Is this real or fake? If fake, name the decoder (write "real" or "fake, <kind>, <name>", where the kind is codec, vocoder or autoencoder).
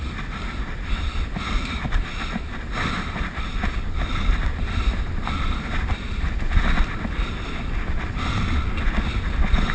real